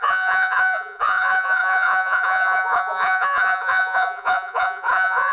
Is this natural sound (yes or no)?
no